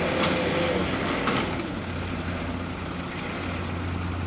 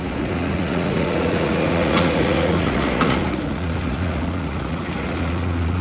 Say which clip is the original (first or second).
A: first